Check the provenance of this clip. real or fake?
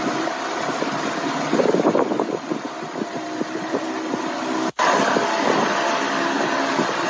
real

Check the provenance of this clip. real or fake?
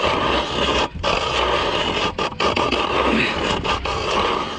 real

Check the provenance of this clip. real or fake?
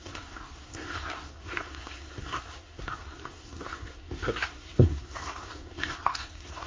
fake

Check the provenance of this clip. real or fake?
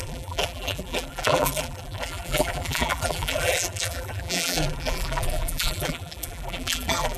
fake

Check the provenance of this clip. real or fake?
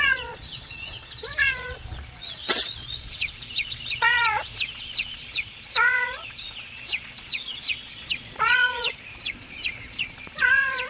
fake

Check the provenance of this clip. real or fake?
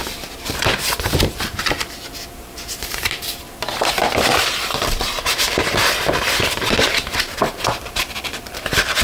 fake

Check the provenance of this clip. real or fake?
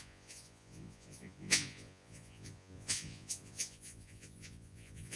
fake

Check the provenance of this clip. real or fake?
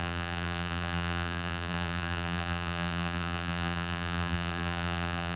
fake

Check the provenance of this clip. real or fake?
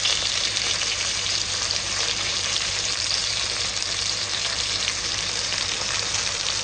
fake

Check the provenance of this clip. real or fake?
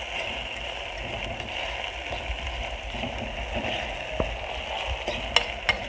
real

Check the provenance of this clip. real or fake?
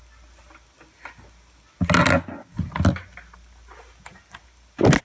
real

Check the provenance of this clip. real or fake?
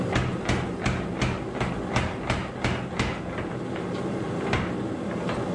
real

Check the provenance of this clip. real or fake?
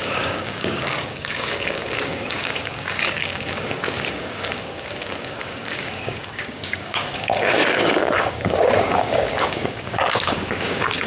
fake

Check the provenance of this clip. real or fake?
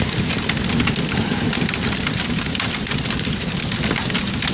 fake